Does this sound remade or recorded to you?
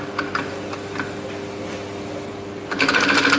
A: recorded